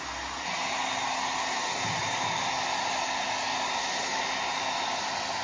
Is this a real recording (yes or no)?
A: yes